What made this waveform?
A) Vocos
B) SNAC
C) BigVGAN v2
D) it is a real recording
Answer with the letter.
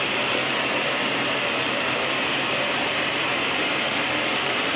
C